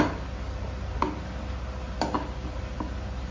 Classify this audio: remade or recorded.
recorded